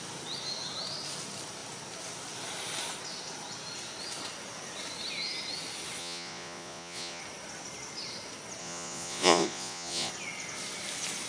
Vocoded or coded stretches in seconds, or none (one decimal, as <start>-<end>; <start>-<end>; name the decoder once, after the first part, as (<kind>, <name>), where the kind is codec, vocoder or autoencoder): 6.0-7.2 (vocoder, Vocos); 8.6-10.1